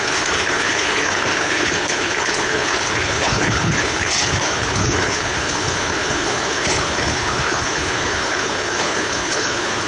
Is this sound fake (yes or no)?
yes